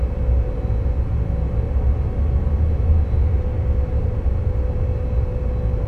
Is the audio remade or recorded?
recorded